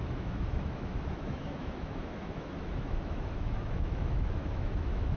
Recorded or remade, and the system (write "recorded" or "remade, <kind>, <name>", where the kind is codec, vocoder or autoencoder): remade, autoencoder, DAC-VAE